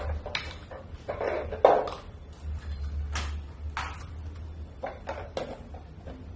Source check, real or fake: real